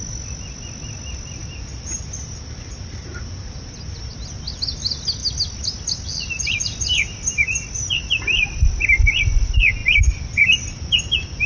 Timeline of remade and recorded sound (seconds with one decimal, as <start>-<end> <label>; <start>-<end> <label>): 0.0-11.5 recorded